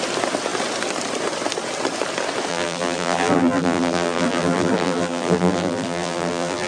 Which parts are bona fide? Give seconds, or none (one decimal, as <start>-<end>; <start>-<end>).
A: 0.0-2.5